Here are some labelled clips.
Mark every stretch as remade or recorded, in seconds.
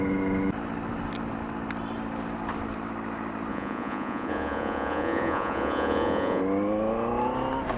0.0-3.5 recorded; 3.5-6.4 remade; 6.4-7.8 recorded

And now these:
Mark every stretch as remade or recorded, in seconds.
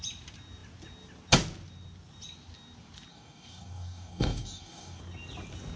0.0-3.1 recorded; 3.1-5.0 remade; 5.0-5.8 recorded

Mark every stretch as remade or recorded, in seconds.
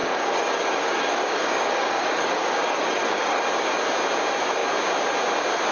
0.0-3.4 remade; 3.4-5.7 recorded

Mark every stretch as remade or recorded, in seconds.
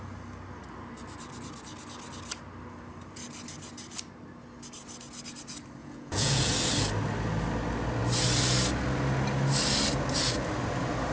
0.0-5.8 recorded; 5.8-6.4 remade; 6.4-11.1 recorded